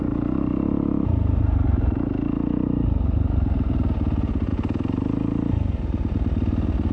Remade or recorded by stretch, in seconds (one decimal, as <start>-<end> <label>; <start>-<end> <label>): 0.0-6.9 recorded